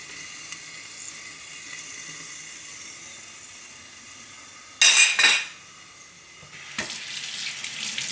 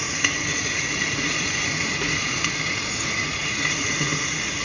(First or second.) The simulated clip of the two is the second